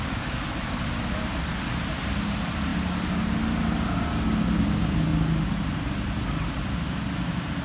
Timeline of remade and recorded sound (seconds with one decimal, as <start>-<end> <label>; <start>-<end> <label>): 0.0-2.7 remade; 2.7-4.6 recorded; 4.6-5.1 remade; 5.1-6.5 recorded; 6.5-7.6 remade